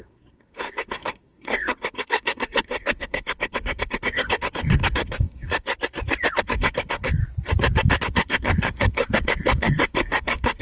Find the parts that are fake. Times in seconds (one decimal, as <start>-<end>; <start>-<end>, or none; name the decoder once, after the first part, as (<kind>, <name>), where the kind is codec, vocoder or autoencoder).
0.0-5.7 (codec, SNAC); 6.4-7.2; 8.0-10.6